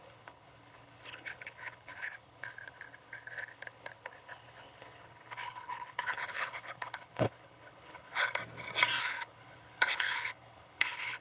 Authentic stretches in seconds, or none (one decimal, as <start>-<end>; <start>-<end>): 8.4-9.0